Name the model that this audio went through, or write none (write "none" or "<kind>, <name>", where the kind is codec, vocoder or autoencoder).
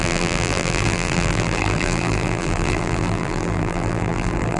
vocoder, BigVGAN v2